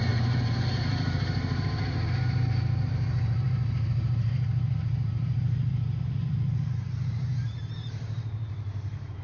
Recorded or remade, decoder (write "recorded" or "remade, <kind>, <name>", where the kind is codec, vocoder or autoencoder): remade, vocoder, BigVGAN v2